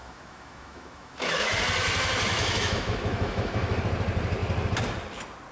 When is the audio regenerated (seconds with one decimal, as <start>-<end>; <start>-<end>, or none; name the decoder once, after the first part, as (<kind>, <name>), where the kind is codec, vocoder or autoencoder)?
0.0-1.5 (autoencoder, DAC-VAE); 2.3-3.8